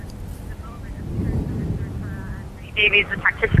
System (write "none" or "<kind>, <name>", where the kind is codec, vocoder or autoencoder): none